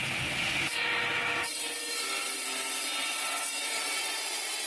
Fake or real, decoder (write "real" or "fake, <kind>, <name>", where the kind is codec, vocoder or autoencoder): real